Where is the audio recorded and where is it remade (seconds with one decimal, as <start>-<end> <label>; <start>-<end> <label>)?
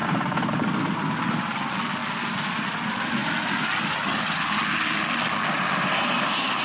0.0-6.6 recorded